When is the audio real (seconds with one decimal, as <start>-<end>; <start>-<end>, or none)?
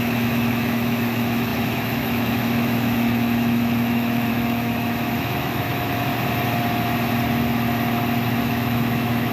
6.1-8.4